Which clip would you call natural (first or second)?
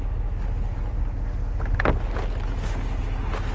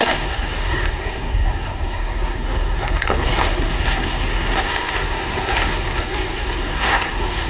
first